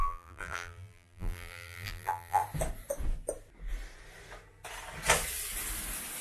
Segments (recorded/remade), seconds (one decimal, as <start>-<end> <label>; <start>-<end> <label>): 0.0-2.4 remade; 2.4-6.2 recorded